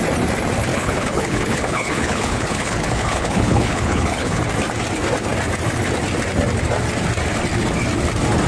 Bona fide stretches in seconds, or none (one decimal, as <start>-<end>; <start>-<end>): 0.0-0.7; 4.4-8.5